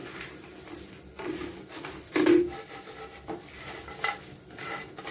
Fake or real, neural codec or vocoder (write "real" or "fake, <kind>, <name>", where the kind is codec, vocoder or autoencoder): real